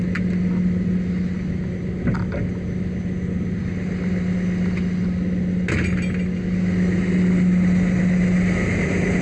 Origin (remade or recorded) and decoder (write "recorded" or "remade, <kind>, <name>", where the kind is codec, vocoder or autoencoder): recorded